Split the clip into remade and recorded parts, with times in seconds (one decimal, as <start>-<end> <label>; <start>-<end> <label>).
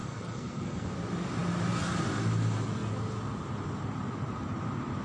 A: 0.0-0.9 remade; 0.9-5.0 recorded